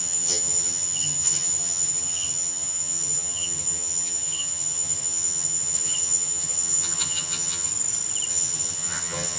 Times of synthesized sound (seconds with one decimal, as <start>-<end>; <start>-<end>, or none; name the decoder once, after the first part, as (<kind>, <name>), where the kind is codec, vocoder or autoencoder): 0.0-7.7 (vocoder, HiFi-GAN); 8.3-9.4